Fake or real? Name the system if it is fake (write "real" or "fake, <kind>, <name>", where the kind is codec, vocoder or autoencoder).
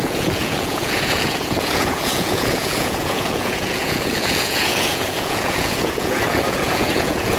fake, vocoder, Vocos